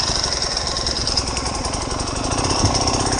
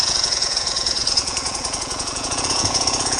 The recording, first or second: first